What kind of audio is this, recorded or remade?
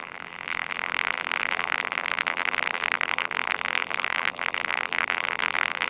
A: remade